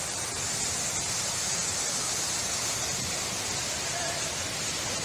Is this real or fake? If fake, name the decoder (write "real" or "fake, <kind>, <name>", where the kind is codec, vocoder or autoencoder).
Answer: real